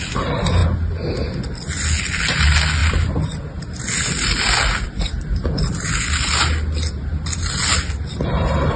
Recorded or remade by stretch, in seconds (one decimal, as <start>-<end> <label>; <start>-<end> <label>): 0.0-2.8 recorded; 2.8-5.9 remade; 5.9-8.8 recorded